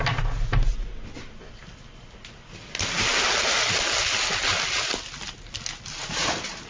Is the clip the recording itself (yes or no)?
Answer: yes